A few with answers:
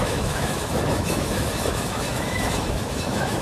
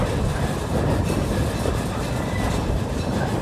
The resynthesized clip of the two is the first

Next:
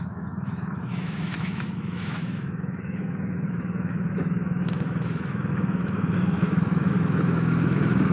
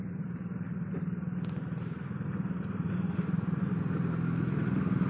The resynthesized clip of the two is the first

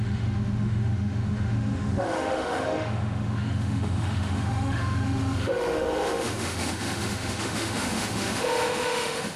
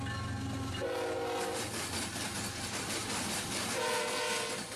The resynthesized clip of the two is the first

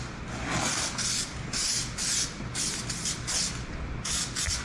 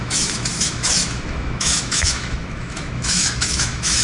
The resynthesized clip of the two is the second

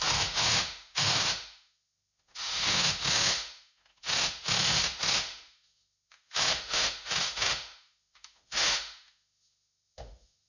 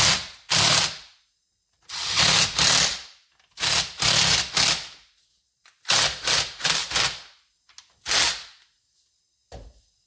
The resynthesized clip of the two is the first